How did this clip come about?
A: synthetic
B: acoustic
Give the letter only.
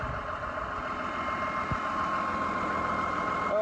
B